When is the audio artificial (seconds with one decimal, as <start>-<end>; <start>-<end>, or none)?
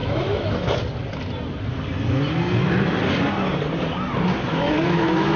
0.0-0.8; 4.5-5.4